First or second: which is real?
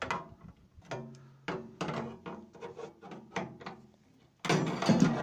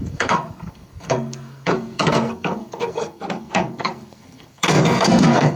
first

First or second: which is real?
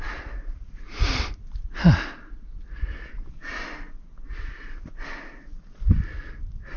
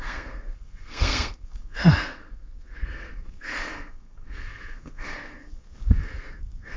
first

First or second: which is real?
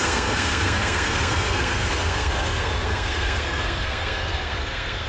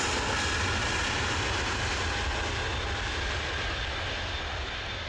second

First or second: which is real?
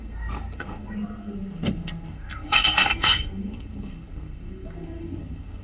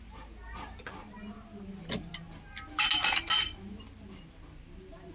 second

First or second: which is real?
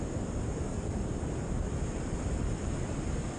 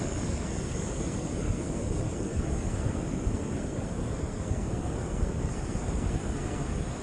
first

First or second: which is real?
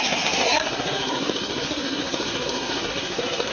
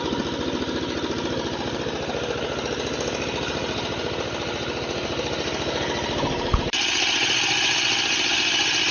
second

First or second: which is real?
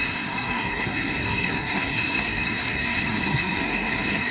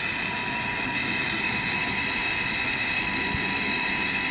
second